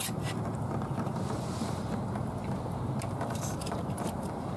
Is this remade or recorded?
remade